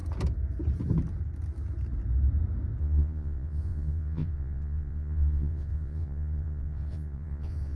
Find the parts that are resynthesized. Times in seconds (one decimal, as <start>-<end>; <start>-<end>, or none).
2.8-7.8